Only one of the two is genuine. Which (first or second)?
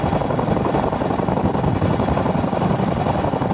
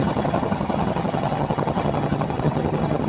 first